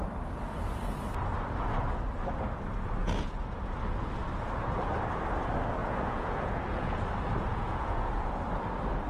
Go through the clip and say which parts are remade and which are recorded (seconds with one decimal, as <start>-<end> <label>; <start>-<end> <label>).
0.0-3.0 recorded; 3.0-3.8 remade; 3.8-5.8 recorded; 5.8-7.0 remade; 7.0-7.5 recorded; 7.5-8.3 remade; 8.3-9.1 recorded